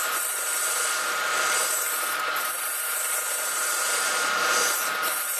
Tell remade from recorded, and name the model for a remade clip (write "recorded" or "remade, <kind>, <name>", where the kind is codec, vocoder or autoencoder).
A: remade, vocoder, BigVGAN v2